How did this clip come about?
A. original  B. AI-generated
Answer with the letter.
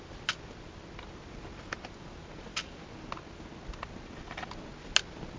A